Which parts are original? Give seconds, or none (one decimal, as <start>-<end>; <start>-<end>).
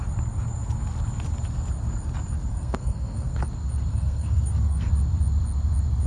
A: 0.0-2.5; 3.4-3.9; 4.9-6.1